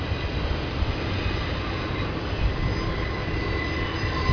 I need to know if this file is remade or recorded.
recorded